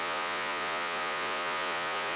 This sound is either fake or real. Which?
fake